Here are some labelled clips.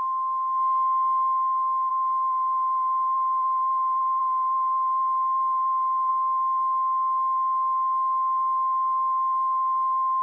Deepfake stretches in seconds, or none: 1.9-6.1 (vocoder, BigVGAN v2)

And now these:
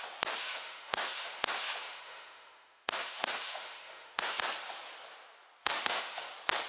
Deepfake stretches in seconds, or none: 0.4-4.4 (autoencoder, DAC-VAE); 5.6-6.3

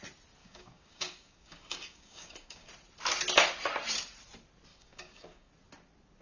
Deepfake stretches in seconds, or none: 0.4-2.7 (codec, DAC); 4.7-5.5

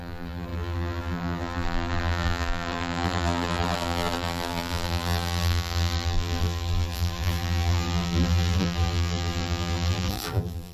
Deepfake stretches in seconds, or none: 0.0-10.7 (vocoder, BigVGAN v2)

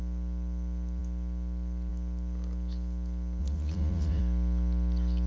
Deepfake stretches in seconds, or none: 3.4-4.2 (vocoder, Vocos)